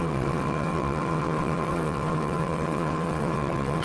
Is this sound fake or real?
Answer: fake